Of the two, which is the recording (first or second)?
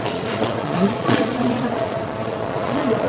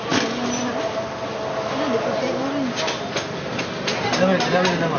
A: second